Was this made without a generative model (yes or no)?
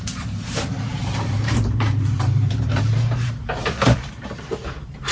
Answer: no